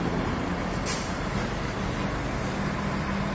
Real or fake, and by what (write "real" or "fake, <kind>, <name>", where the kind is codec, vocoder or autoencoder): real